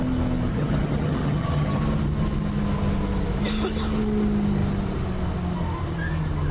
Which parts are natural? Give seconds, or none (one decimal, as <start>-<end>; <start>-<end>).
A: 0.0-0.5; 1.8-6.5